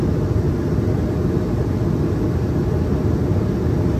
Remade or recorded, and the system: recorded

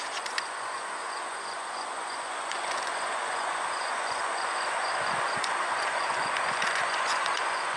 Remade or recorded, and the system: remade, vocoder, Vocos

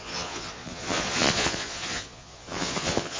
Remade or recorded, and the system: remade, vocoder, Vocos